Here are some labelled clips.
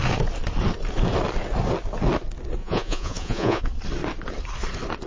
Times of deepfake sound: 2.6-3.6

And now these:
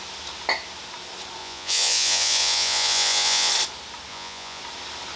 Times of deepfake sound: 1.4-3.5; 4.1-4.6

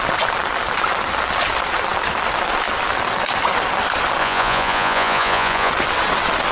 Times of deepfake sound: 4.2-5.7

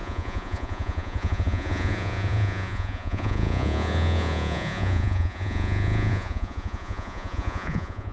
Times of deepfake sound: 0.0-8.1